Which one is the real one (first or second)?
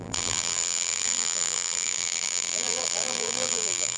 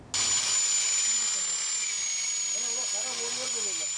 second